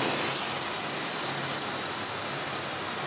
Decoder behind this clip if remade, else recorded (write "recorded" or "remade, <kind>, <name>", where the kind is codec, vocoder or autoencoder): recorded